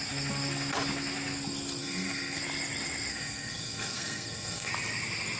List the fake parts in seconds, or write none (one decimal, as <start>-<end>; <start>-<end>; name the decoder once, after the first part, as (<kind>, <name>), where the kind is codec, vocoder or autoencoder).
1.8-2.4 (codec, SNAC); 3.1-4.7